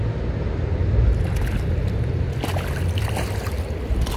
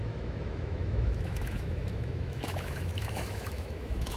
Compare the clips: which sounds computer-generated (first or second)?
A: second